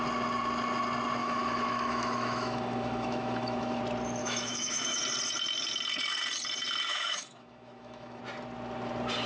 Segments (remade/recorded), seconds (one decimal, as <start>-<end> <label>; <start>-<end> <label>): 0.0-1.2 recorded; 1.2-3.8 remade; 3.8-4.2 recorded; 4.2-5.0 remade; 5.0-6.9 recorded; 6.9-8.2 remade; 8.2-9.3 recorded